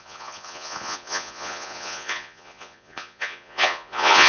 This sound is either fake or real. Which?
fake